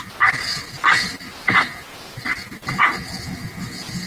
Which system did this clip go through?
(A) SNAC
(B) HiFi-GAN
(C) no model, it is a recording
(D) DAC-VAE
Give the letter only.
C